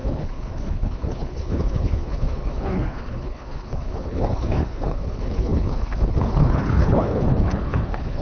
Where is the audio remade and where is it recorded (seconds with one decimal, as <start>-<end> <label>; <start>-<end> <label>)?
0.0-8.2 remade